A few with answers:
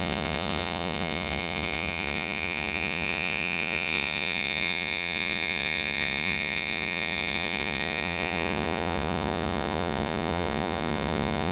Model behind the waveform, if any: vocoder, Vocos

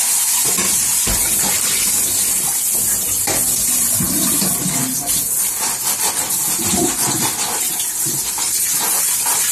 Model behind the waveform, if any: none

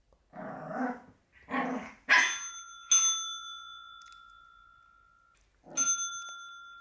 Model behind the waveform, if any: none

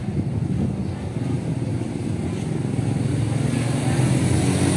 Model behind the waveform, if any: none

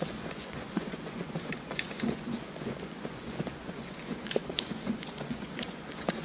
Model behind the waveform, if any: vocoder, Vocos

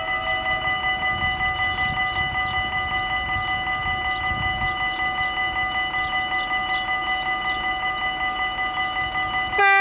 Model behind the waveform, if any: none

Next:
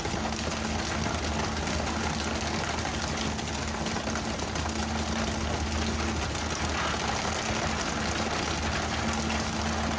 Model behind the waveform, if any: none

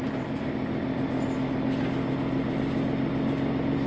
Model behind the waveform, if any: none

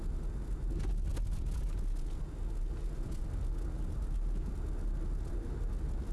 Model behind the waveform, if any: none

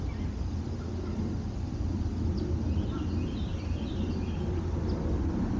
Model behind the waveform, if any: none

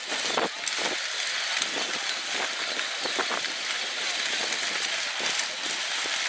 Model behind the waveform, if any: none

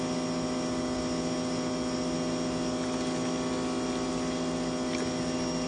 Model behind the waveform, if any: none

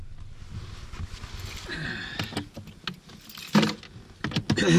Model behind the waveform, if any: none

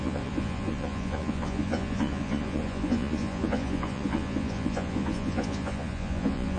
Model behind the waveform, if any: vocoder, Vocos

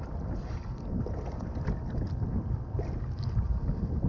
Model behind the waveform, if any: none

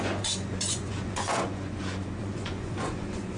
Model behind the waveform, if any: vocoder, Vocos